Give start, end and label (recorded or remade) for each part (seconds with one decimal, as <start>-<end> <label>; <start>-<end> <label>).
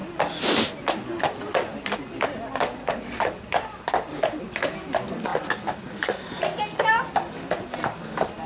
0.0-8.5 recorded